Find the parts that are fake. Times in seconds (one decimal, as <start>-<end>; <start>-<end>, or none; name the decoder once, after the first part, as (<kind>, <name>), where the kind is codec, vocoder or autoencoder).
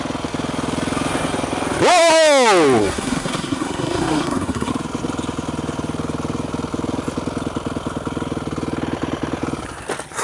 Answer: 2.8-4.7 (codec, SNAC)